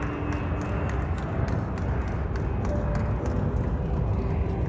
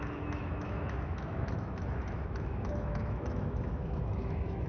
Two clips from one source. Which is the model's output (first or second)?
second